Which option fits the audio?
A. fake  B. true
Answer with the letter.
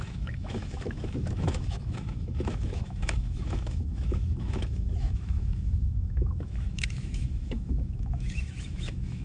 A